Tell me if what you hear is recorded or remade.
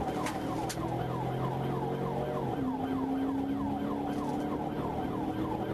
recorded